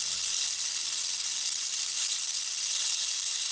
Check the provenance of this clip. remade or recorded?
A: recorded